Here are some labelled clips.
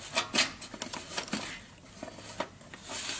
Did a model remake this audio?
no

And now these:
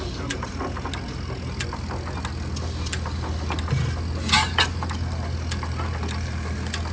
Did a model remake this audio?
no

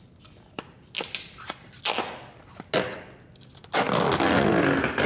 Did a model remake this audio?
no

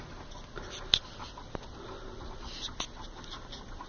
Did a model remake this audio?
no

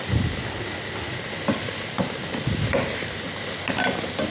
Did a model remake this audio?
no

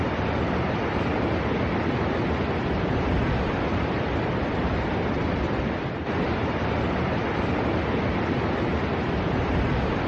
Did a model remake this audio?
no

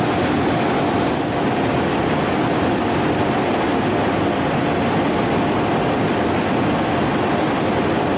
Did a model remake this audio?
no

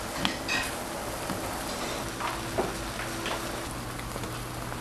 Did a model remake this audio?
no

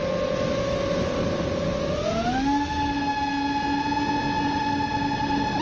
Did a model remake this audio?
no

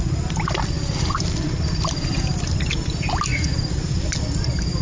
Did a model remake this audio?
no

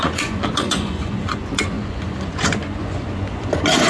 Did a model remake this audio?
yes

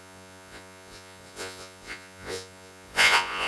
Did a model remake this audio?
yes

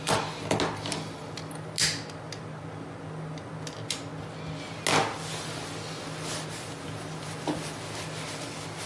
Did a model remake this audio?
no